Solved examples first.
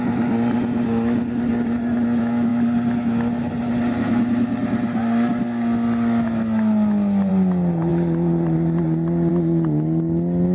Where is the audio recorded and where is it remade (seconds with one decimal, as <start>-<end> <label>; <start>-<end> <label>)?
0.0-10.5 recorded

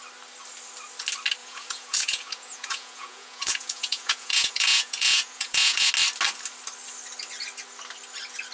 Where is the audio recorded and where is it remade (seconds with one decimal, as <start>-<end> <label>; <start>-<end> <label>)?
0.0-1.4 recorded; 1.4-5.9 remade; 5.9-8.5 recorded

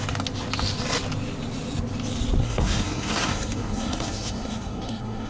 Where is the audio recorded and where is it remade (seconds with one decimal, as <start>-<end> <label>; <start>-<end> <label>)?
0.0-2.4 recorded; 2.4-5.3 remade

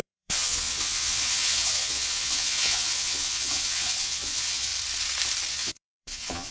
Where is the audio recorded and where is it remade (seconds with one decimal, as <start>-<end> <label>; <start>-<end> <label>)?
0.0-4.7 remade; 4.7-5.5 recorded; 5.5-6.5 remade

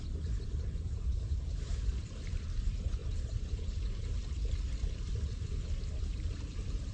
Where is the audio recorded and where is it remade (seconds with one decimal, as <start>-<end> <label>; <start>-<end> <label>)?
0.0-3.0 remade; 3.0-6.0 recorded; 6.0-6.9 remade